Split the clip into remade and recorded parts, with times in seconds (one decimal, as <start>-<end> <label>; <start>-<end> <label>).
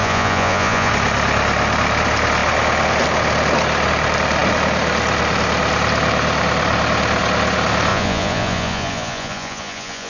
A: 0.0-0.9 remade; 0.9-7.9 recorded; 7.9-10.1 remade